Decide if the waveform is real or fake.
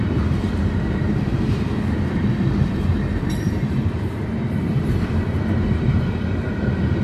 fake